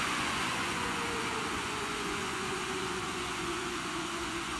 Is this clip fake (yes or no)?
yes